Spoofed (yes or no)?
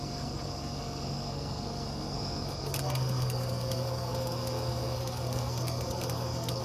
yes